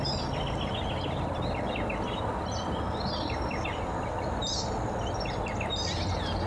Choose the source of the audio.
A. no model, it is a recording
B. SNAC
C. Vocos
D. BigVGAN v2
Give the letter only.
A